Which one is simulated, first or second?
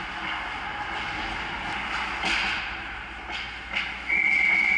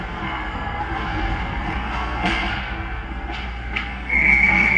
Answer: second